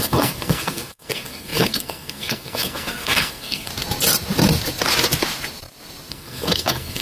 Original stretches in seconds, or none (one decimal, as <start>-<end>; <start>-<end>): 3.7-6.1

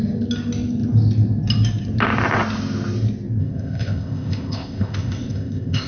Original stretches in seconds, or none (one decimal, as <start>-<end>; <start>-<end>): 0.0-3.4

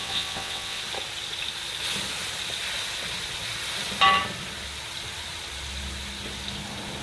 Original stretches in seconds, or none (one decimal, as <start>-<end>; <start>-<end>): 0.8-7.0

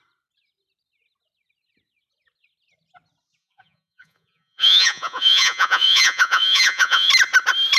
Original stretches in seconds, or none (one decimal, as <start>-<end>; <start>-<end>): 0.0-3.4; 7.1-7.8

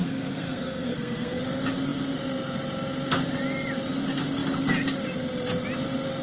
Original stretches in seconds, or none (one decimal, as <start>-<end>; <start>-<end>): 1.4-6.2

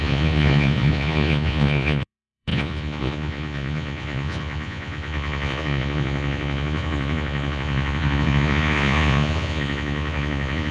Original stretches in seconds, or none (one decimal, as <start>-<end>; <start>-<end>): none

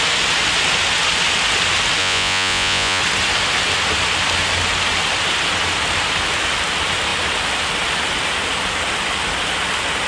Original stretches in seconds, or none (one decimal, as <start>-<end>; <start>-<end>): 0.0-2.0; 3.0-10.1

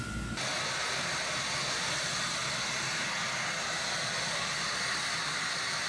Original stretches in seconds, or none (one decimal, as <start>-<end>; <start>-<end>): 0.0-5.9